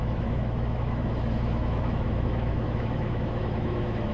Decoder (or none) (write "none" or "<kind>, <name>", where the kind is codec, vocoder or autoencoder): autoencoder, DAC-VAE